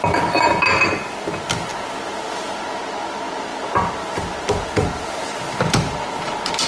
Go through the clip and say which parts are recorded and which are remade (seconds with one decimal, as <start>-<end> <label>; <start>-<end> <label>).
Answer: 0.0-6.7 recorded